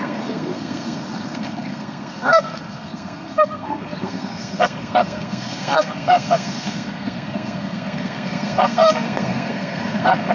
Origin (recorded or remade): remade